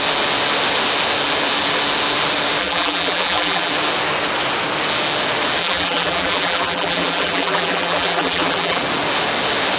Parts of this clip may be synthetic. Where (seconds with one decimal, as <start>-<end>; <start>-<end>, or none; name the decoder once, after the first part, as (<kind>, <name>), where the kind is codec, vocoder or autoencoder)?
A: 2.6-3.7 (vocoder, BigVGAN v2); 5.6-8.8